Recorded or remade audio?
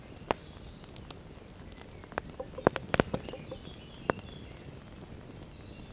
recorded